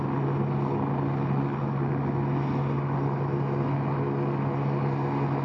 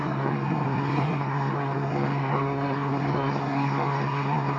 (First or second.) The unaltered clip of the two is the first